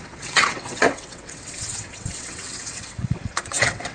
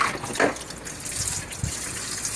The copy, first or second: first